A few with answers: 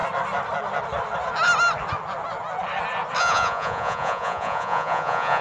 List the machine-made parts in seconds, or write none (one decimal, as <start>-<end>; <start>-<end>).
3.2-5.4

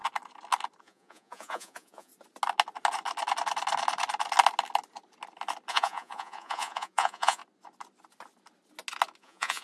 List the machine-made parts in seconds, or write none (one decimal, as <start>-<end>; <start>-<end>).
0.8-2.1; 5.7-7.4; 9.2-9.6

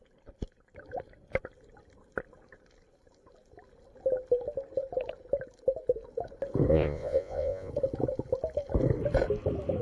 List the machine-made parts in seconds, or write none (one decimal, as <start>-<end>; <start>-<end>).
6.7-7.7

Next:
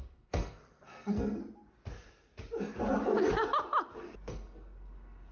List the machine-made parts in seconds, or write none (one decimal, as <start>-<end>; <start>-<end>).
0.0-1.4; 4.3-5.3

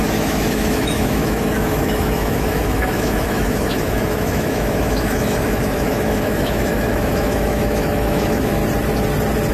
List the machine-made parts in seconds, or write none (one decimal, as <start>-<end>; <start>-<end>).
0.0-8.6

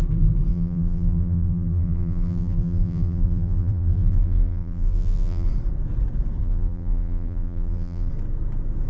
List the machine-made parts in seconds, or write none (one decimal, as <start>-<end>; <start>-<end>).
0.5-5.5; 6.4-8.1

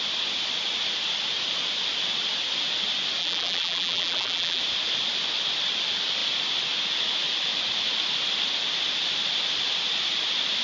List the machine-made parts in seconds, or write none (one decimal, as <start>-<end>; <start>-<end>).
3.2-4.6

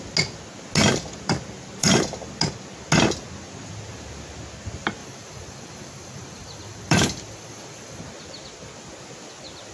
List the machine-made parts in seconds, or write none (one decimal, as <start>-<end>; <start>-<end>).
5.0-8.0